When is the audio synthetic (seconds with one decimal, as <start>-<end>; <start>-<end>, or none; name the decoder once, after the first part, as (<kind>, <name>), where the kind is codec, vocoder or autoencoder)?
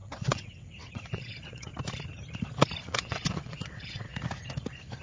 0.0-1.7 (vocoder, WaveNeXt); 2.8-4.1